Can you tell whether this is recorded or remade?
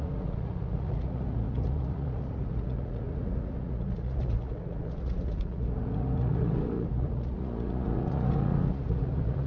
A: remade